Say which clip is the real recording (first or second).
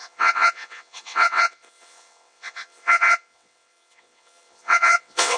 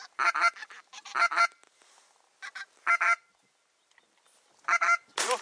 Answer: second